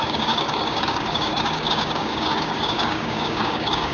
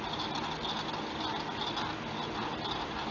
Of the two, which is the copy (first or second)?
first